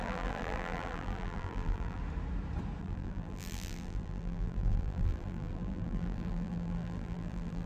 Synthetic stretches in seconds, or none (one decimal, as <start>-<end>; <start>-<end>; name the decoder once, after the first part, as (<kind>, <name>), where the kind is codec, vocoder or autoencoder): 0.0-2.0 (vocoder, BigVGAN v2); 2.8-7.7